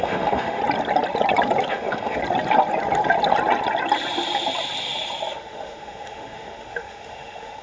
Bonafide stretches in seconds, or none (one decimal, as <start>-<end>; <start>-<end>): 0.6-1.7; 2.2-5.3